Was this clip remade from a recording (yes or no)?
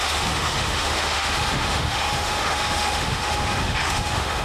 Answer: yes